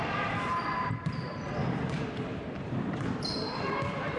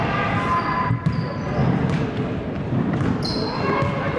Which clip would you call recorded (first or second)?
second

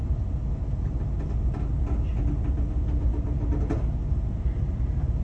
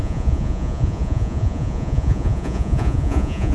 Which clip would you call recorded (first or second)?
first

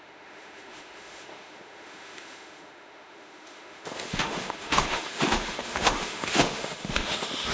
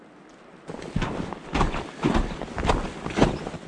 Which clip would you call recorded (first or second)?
second